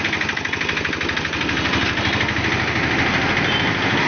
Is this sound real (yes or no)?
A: yes